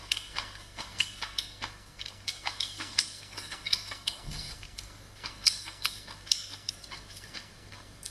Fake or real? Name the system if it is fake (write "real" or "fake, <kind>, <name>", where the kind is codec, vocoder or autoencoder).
fake, codec, SNAC